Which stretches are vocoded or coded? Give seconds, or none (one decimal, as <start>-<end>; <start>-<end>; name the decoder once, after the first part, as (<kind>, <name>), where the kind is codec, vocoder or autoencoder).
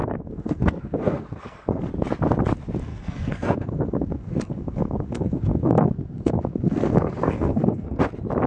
0.0-1.9 (codec, SNAC); 2.9-8.0